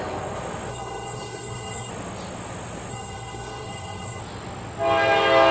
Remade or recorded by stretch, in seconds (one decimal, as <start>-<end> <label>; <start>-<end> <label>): 0.0-0.7 recorded; 0.7-1.9 remade; 1.9-2.9 recorded; 2.9-4.2 remade; 4.2-5.5 recorded